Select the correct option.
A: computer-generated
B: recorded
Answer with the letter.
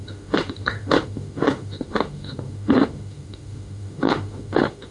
A